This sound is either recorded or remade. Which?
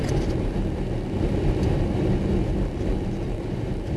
recorded